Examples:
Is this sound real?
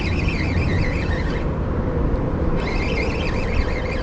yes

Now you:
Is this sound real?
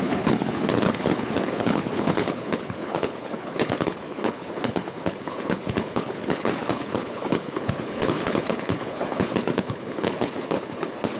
no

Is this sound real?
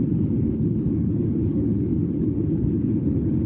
no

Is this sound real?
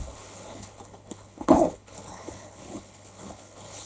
no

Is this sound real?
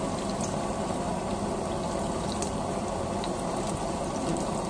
yes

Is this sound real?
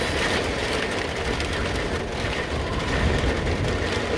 yes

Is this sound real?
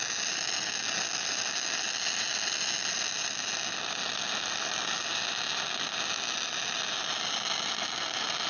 yes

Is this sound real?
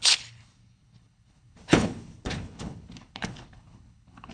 no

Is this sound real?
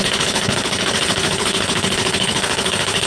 no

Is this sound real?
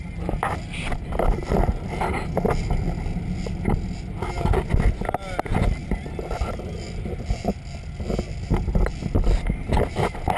yes